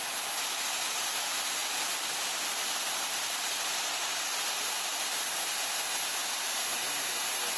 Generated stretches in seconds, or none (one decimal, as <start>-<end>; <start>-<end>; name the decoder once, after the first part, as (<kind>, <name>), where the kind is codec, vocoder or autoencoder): none